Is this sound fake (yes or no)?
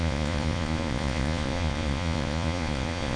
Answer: yes